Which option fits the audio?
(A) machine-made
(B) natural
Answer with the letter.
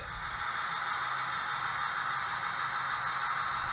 B